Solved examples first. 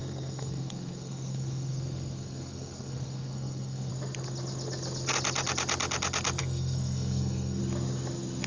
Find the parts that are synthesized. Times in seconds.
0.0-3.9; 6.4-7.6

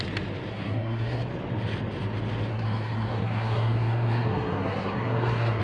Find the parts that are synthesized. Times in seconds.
0.5-1.3; 2.5-5.6

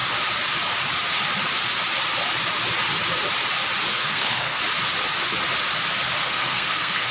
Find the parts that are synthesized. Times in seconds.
3.9-4.6; 6.2-7.1

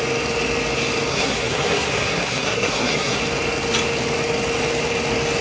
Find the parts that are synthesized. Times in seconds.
1.1-3.2

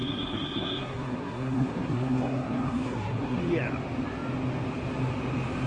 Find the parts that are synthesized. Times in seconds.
0.0-3.4

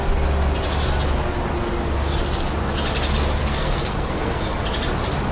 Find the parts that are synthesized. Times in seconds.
3.4-4.4

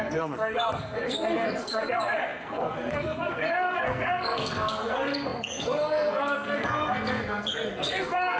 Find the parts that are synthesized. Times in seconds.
0.0-8.4